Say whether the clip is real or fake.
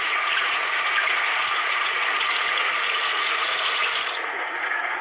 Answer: fake